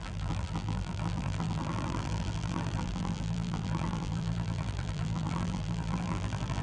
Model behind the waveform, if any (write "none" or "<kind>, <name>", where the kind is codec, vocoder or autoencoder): vocoder, BigVGAN v2